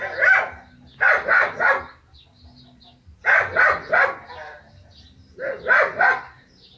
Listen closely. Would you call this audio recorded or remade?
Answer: recorded